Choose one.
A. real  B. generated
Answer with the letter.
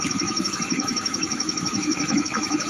B